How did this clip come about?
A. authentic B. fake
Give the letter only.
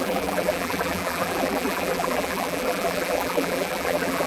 B